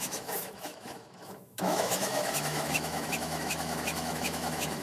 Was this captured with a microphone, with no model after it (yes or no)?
no